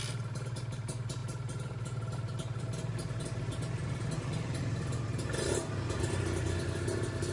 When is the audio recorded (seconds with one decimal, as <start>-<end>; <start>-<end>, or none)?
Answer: 0.0-7.3